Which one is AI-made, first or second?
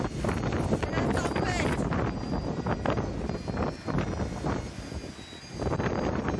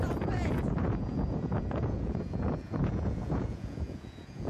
second